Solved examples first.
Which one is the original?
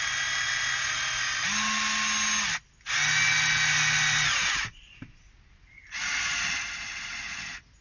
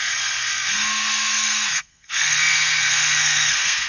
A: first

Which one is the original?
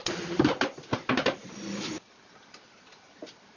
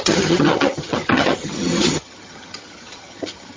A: first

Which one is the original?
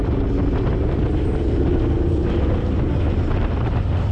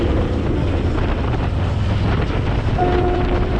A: first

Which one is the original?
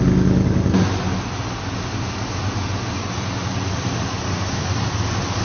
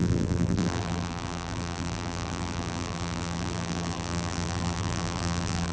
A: first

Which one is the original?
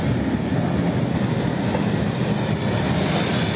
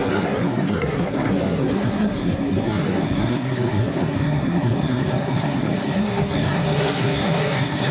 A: first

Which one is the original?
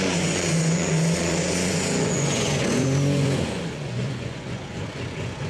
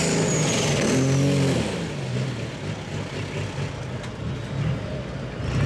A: second